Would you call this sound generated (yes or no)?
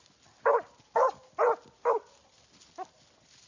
no